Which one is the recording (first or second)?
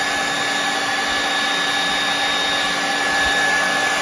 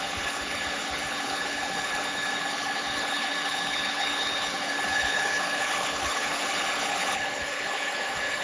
first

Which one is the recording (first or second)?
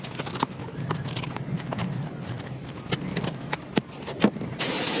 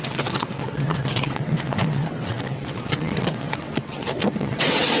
first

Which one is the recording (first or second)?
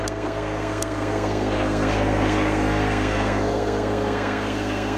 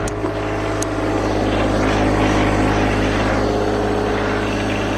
second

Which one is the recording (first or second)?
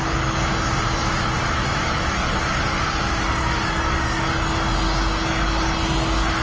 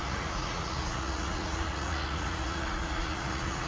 first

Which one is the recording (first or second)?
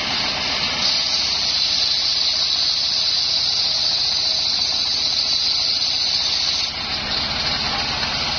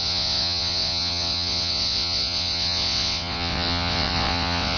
first